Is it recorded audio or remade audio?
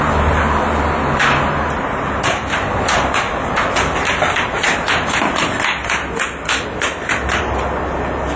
recorded